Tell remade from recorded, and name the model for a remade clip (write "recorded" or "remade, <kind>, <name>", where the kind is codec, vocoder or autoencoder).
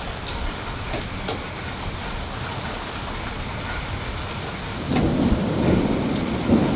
recorded